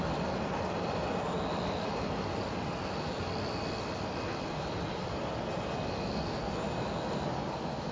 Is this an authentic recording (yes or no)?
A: yes